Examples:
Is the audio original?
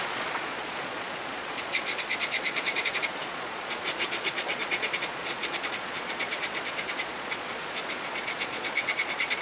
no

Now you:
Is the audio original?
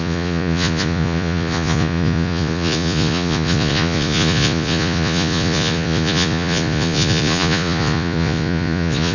no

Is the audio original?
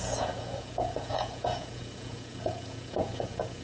no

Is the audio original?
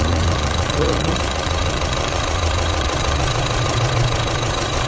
no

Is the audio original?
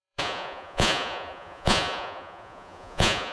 no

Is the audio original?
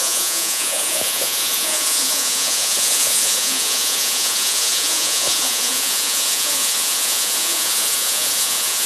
no